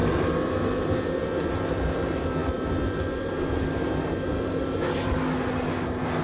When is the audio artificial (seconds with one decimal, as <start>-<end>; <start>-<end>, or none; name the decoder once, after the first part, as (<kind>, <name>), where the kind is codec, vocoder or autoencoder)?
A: none